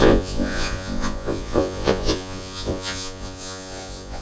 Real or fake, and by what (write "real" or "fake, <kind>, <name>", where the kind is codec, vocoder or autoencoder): fake, vocoder, Vocos